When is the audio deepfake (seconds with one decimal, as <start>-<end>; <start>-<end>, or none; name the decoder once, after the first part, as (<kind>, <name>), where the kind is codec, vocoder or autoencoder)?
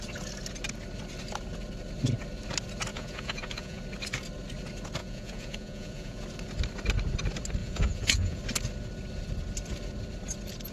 2.9-3.8 (vocoder, Vocos); 5.0-6.2; 7.6-8.4